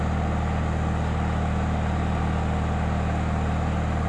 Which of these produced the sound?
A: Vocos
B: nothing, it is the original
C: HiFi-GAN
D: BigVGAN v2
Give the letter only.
B